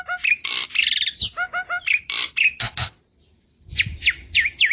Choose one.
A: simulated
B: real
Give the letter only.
A